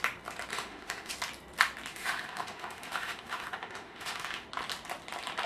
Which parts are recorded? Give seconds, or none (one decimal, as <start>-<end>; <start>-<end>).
0.0-0.5; 1.1-1.9; 4.5-5.5